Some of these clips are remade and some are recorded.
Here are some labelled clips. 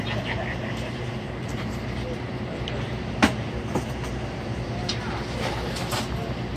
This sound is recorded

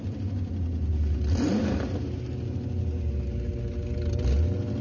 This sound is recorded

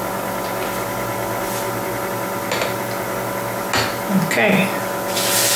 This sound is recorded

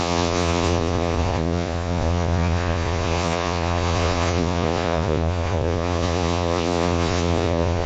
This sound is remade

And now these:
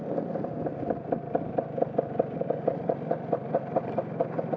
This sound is remade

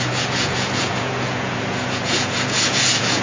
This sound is remade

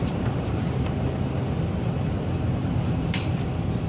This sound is recorded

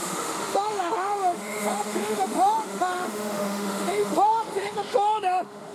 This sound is remade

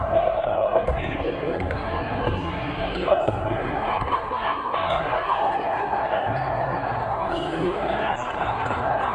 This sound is remade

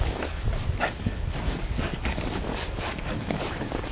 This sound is remade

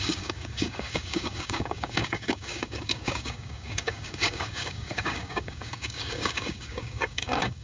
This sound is remade